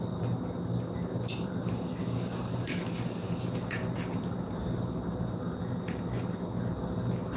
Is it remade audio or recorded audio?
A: recorded